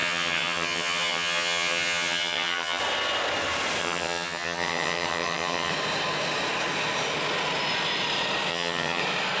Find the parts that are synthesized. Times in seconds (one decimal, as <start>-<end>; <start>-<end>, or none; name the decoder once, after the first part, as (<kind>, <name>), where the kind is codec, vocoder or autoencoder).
0.0-2.8 (vocoder, HiFi-GAN); 3.8-5.7; 8.5-9.0